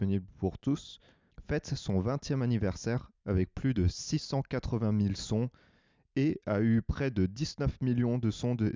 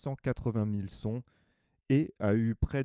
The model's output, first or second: second